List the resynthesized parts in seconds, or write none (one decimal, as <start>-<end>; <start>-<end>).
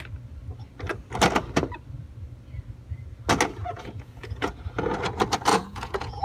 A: 3.6-4.5; 5.5-6.2